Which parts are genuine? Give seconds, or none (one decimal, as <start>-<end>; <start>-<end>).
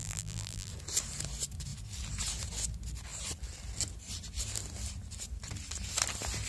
0.7-6.5